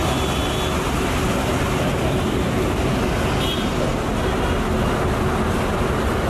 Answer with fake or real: real